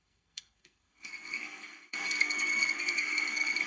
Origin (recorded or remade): remade